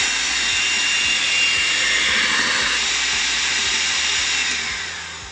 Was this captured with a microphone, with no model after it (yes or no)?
yes